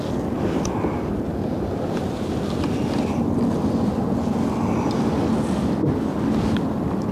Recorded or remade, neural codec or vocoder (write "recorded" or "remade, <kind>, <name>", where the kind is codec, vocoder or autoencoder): recorded